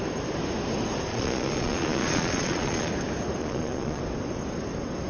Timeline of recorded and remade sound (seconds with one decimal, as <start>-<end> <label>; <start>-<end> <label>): 0.0-1.1 recorded; 1.1-2.9 remade; 2.9-3.4 recorded; 3.4-4.0 remade; 4.0-5.1 recorded